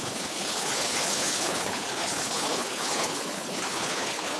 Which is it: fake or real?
fake